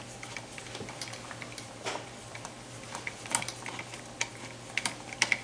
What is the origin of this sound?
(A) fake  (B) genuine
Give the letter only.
B